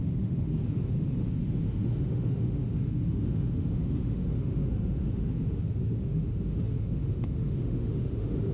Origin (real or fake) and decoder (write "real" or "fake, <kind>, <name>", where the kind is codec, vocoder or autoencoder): fake, autoencoder, DAC-VAE